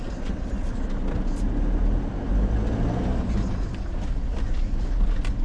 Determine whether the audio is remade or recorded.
recorded